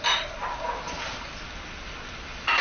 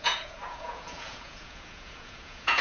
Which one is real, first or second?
first